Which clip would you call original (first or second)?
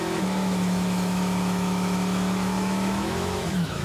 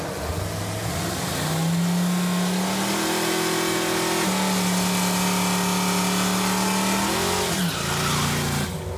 second